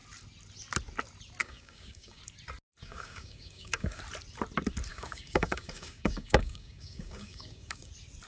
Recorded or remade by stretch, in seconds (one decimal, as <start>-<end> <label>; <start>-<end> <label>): 0.0-1.4 recorded; 1.4-2.2 remade; 2.2-2.8 recorded; 2.8-4.0 remade; 4.0-4.9 recorded; 4.9-7.9 remade; 7.9-8.3 recorded